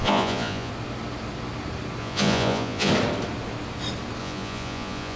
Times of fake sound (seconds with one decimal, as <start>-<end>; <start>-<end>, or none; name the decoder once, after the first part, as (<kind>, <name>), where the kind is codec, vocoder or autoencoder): 0.0-0.7 (vocoder, Vocos); 2.0-2.9; 4.2-5.2